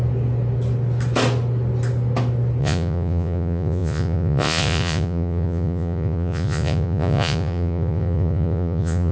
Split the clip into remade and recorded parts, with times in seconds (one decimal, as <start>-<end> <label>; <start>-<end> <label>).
0.0-2.6 recorded; 2.6-9.1 remade

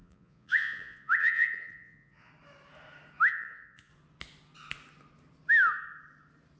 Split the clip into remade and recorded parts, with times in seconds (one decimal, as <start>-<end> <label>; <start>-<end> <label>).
0.0-2.3 remade; 2.3-3.3 recorded; 3.3-3.9 remade; 3.9-6.6 recorded

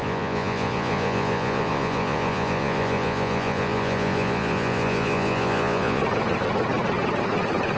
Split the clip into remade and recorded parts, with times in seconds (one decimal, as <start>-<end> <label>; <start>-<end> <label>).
0.0-6.0 remade; 6.0-7.8 recorded

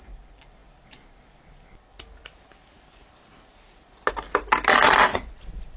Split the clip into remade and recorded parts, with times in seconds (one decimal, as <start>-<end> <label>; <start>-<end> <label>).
0.0-5.1 recorded; 5.1-5.8 remade

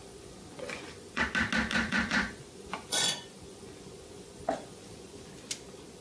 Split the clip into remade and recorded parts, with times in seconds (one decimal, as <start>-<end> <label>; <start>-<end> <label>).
0.0-1.2 remade; 1.2-1.7 recorded; 1.7-5.3 remade; 5.3-6.0 recorded

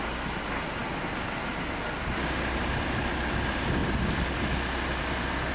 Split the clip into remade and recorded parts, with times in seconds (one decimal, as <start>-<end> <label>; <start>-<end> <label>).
0.0-5.5 recorded

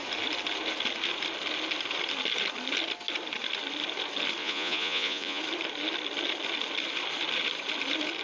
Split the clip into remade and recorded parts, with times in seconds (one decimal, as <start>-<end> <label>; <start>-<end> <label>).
0.0-4.4 recorded; 4.4-5.4 remade; 5.4-8.2 recorded